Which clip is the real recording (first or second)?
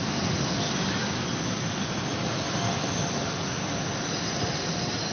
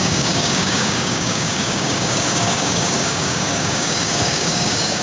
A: first